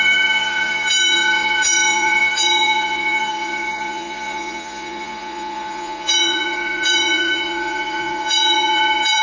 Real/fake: fake